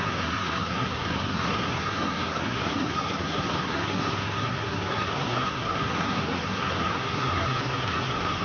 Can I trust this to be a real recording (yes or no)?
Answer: no